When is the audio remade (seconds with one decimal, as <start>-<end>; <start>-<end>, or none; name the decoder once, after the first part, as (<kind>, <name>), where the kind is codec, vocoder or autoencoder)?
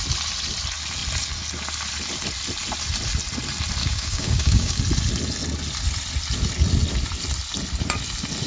3.8-4.8 (codec, DAC)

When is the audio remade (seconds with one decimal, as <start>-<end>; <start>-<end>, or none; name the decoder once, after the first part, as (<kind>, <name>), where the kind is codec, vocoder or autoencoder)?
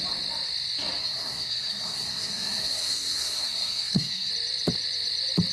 1.0-4.3 (codec, SNAC)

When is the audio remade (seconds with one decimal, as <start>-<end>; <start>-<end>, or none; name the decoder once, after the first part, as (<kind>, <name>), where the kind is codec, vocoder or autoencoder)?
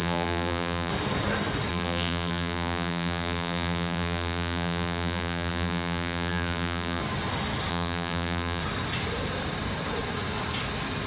0.0-0.9 (vocoder, BigVGAN v2); 1.7-7.0; 7.7-8.6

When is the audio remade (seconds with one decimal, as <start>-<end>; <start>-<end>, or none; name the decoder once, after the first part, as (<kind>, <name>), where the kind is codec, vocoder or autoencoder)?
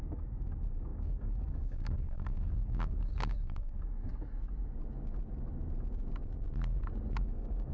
0.0-4.1 (codec, DAC); 7.2-7.7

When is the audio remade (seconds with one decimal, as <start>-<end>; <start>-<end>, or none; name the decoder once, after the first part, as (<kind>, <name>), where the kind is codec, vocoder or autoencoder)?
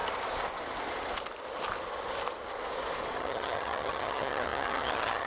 3.2-5.3 (vocoder, HiFi-GAN)